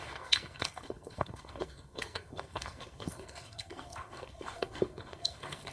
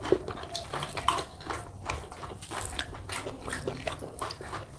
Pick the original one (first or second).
second